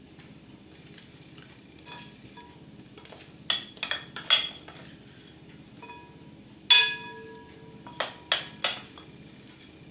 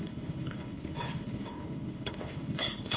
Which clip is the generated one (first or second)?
second